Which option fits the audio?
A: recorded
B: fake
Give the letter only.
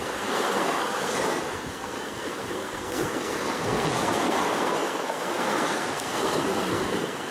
B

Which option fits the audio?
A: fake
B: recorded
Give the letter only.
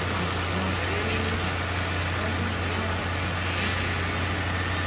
B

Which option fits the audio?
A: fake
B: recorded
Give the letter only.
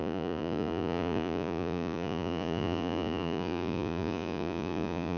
A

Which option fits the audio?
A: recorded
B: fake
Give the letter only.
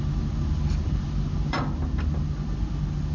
A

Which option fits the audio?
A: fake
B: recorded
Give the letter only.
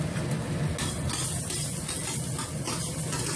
B